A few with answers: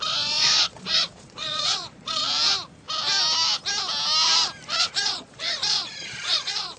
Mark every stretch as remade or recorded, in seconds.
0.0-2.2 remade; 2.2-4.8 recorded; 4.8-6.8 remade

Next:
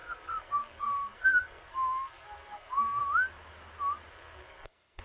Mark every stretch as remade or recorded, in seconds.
0.0-3.0 remade; 3.0-4.1 recorded; 4.1-5.0 remade